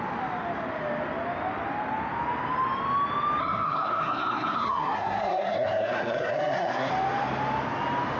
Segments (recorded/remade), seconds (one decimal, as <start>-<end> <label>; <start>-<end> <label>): 0.0-3.4 recorded; 3.4-6.9 remade; 6.9-8.2 recorded